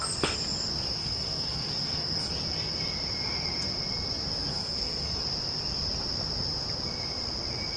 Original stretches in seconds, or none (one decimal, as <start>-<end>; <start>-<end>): 0.0-1.0; 2.3-4.5; 5.2-7.8

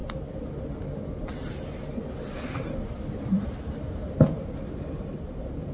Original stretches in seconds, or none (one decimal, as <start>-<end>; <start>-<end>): 0.0-3.2

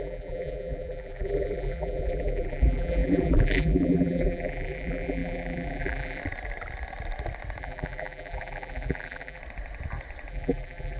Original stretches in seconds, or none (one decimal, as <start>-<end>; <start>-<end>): 6.2-7.6; 9.4-10.3

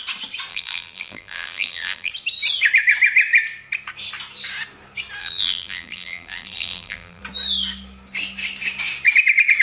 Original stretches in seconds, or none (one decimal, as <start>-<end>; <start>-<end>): 0.0-0.5; 2.1-5.2; 7.2-9.6

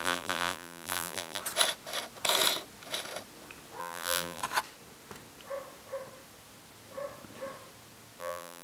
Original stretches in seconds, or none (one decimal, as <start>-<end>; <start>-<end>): 1.4-3.8; 4.4-8.2

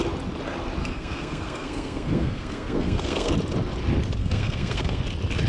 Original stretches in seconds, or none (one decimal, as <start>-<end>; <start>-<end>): 0.0-0.8; 3.3-4.2; 5.0-5.5

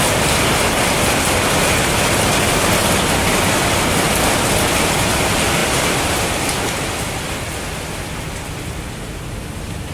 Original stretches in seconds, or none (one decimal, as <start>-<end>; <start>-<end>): 0.0-9.9

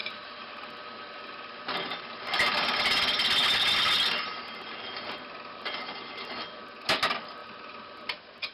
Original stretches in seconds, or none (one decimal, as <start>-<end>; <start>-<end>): 0.5-7.4; 8.0-8.5